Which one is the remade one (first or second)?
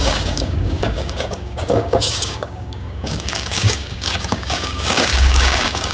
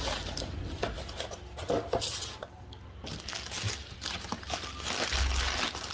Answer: first